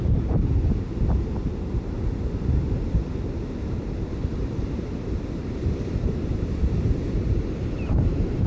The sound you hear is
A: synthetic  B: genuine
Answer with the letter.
A